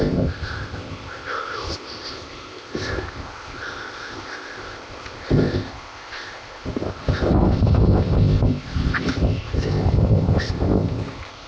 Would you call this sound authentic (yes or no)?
no